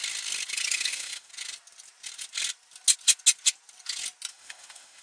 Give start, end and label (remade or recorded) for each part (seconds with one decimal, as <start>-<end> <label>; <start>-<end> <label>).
0.0-0.9 recorded; 0.9-1.3 remade; 1.3-4.3 recorded; 4.3-5.0 remade